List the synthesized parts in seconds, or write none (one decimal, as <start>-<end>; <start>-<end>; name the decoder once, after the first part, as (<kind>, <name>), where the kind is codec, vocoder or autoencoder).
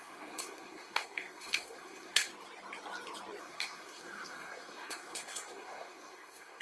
0.0-2.3 (codec, SNAC); 3.4-6.6